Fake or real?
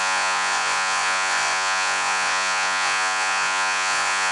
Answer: fake